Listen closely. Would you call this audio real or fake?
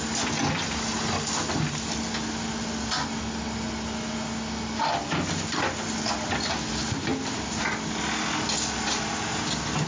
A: real